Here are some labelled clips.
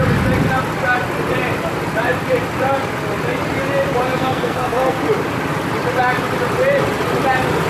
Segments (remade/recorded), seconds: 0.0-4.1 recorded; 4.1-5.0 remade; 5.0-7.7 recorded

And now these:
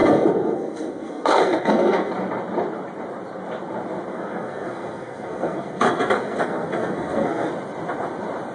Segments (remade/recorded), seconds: 0.0-2.1 remade; 2.1-4.1 recorded; 4.1-7.5 remade; 7.5-8.5 recorded

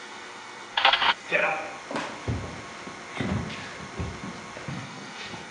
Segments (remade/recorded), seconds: 0.0-1.4 remade; 1.4-4.7 recorded; 4.7-5.5 remade

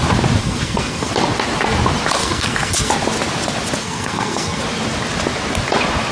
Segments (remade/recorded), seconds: 0.0-0.4 recorded; 0.4-1.1 remade; 1.1-2.2 recorded; 2.2-2.9 remade; 2.9-3.8 recorded; 3.8-4.6 remade; 4.6-6.1 recorded